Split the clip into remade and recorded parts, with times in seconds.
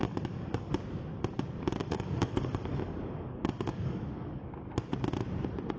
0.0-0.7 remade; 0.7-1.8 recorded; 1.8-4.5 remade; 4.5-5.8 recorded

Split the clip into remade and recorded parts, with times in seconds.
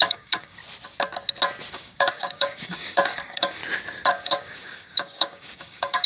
0.0-0.6 remade; 0.6-1.7 recorded; 1.7-3.6 remade; 3.6-4.1 recorded; 4.1-6.1 remade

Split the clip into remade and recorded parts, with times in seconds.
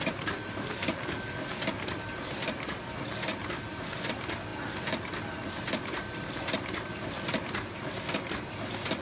0.0-0.8 recorded; 0.8-1.5 remade; 1.5-9.0 recorded